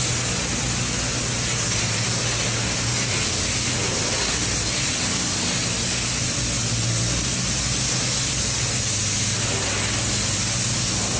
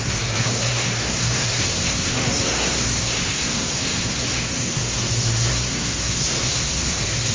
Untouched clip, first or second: first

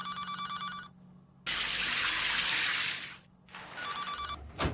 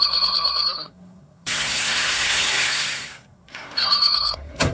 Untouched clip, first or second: first